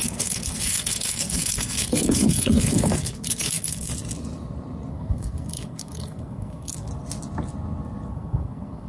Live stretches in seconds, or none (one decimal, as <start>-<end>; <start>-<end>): 3.9-4.9; 6.9-8.1